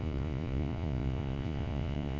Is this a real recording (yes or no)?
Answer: no